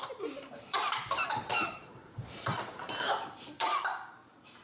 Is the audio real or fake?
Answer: fake